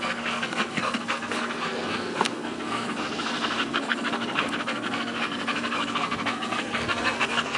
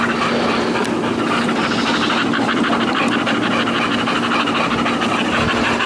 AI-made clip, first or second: first